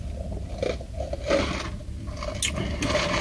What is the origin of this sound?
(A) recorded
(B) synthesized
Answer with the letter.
A